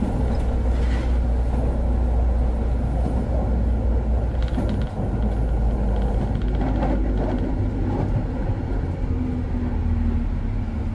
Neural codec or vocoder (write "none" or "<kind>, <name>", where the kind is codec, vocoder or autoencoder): none